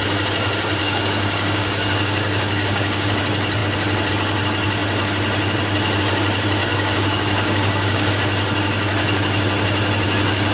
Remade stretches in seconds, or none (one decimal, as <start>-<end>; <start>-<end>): 0.8-3.1; 6.6-8.1

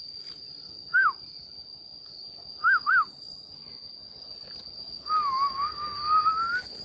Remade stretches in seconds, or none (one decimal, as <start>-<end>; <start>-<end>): 5.5-6.3

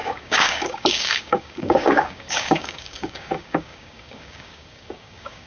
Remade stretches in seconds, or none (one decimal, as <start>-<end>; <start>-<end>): 0.0-5.5

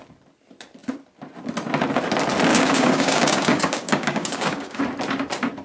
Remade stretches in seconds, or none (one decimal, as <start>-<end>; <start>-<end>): 2.5-4.8